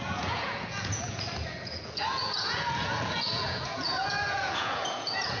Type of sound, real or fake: fake